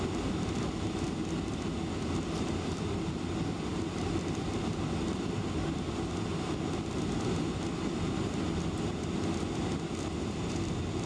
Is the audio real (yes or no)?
yes